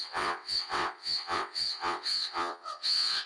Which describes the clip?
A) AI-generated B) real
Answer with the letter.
A